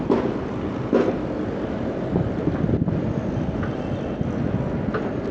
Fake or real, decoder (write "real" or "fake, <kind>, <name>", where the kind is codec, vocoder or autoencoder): real